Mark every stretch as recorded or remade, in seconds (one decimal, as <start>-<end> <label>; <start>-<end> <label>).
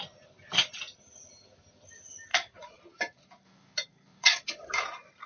0.0-2.3 recorded; 2.3-2.8 remade; 2.8-4.1 recorded; 4.1-4.7 remade; 4.7-5.3 recorded